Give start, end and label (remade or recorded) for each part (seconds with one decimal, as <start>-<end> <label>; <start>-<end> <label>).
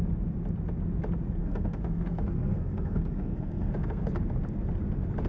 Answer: 0.0-1.4 recorded; 1.4-4.1 remade; 4.1-5.3 recorded